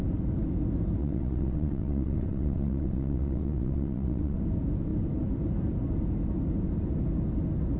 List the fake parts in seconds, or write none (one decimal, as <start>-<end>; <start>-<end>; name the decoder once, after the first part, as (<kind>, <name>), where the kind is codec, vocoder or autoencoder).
1.0-4.4 (vocoder, WaveNeXt)